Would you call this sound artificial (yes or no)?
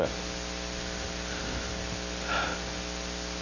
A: no